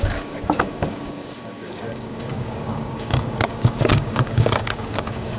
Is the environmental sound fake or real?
fake